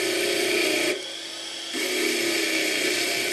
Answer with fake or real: real